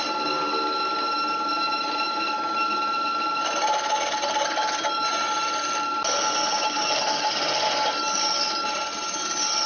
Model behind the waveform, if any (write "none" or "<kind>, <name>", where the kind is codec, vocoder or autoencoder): none